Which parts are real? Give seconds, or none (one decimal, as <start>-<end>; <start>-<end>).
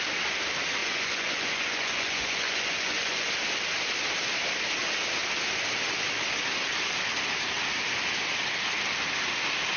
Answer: 0.0-0.8; 3.3-9.8